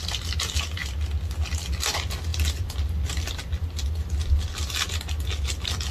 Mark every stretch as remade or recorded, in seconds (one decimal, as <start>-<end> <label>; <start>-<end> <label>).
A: 0.0-5.9 recorded